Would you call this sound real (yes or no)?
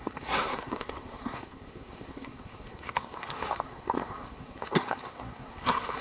no